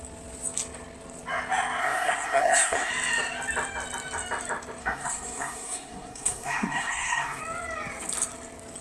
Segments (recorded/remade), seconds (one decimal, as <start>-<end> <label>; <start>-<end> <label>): 0.0-1.8 recorded; 1.8-2.9 remade; 2.9-4.8 recorded; 4.8-7.4 remade; 7.4-8.8 recorded